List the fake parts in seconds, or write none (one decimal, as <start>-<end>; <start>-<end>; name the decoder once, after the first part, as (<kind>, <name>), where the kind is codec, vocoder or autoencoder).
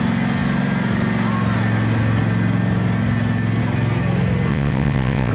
4.5-5.3 (vocoder, WaveNeXt)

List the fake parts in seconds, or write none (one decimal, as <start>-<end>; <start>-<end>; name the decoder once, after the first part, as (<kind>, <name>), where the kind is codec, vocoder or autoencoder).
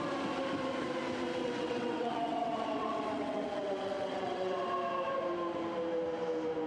1.4-4.7 (vocoder, WaveNeXt)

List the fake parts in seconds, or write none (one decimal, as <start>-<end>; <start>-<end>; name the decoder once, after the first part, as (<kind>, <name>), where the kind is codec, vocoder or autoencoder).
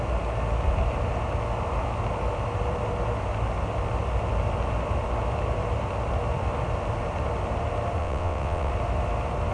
8.0-8.7 (vocoder, WaveNeXt)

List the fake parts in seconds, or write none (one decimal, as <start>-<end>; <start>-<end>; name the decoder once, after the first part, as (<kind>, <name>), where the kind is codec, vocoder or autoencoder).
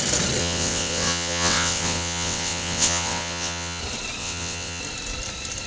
0.4-3.8 (vocoder, WaveNeXt); 4.2-4.8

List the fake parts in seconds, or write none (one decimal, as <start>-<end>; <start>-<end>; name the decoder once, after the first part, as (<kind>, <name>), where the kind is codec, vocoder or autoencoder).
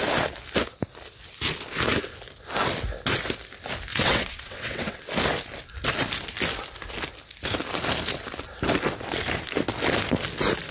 3.9-5.1 (vocoder, WaveNeXt)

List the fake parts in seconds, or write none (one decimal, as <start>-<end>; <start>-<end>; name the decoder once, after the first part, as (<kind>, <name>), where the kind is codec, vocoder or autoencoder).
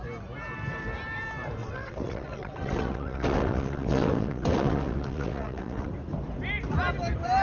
1.6-5.9 (vocoder, WaveNeXt)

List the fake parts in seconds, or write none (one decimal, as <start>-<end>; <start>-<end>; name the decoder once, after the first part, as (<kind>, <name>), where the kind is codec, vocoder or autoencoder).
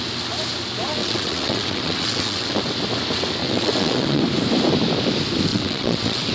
1.0-2.6 (vocoder, WaveNeXt); 3.4-4.2; 5.5-6.3